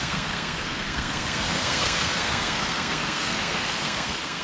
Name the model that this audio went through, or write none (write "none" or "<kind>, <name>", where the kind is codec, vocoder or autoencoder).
codec, SNAC